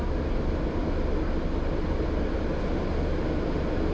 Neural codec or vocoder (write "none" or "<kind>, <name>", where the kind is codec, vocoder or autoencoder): none